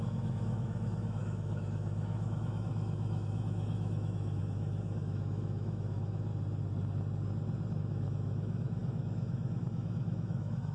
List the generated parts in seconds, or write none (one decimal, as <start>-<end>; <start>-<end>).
0.0-6.3; 7.8-10.7